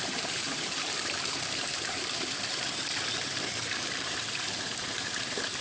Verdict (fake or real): fake